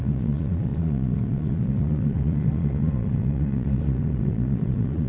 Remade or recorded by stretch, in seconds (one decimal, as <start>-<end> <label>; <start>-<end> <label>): 0.0-5.1 remade